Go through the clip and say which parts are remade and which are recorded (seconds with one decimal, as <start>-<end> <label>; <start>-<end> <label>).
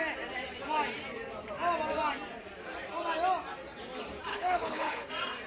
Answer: 0.0-4.3 recorded; 4.3-5.1 remade; 5.1-5.5 recorded